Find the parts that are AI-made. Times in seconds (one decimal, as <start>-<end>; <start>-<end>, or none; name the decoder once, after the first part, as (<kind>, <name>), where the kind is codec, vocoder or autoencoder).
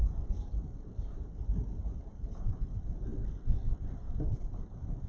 0.0-3.1 (vocoder, BigVGAN v2); 3.8-5.1